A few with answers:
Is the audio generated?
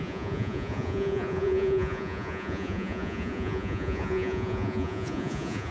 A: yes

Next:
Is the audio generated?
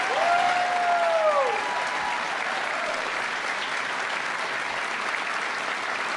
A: no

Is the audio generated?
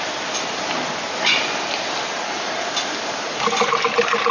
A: no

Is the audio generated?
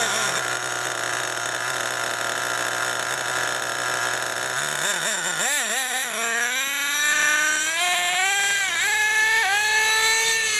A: no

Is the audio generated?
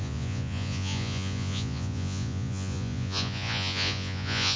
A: yes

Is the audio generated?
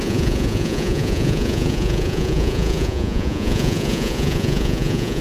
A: yes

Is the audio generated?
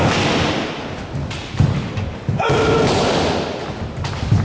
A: no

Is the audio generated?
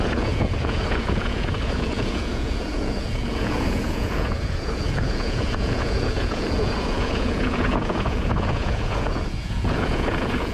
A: yes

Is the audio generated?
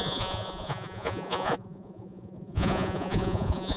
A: yes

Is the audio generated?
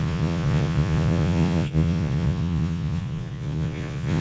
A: yes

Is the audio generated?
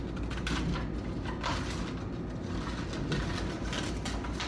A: no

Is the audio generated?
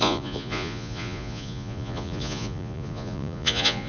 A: yes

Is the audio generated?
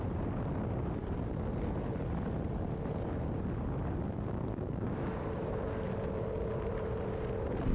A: no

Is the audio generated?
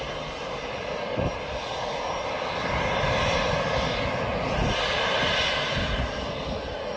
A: no